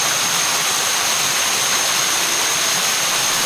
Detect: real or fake real